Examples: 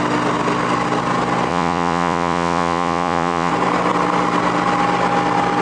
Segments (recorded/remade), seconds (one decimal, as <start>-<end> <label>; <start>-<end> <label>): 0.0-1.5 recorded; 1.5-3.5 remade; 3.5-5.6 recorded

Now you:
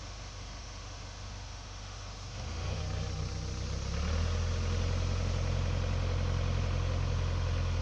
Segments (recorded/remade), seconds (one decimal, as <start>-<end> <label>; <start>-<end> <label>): 0.0-2.8 remade; 2.8-7.8 recorded

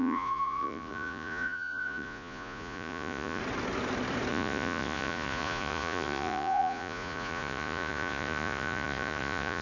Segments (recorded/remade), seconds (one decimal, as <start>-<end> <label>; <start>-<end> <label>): 0.0-3.4 remade; 3.4-4.3 recorded; 4.3-9.6 remade

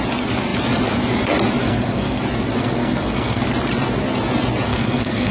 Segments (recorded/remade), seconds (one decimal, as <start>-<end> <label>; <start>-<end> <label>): 0.0-1.6 recorded; 1.6-2.2 remade; 2.2-2.6 recorded; 2.6-3.4 remade; 3.4-4.7 recorded; 4.7-5.3 remade